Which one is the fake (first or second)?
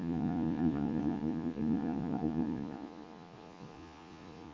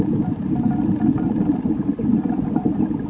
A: first